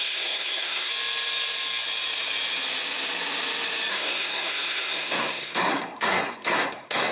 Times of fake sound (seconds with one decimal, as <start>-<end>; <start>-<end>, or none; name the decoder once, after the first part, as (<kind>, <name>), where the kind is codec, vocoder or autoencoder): 0.0-0.9 (codec, SNAC); 3.9-7.1